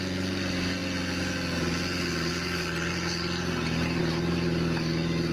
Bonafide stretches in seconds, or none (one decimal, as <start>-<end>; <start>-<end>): 0.0-5.3